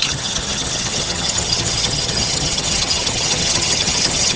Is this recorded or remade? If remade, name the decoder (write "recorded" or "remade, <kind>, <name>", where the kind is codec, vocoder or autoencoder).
remade, vocoder, HiFi-GAN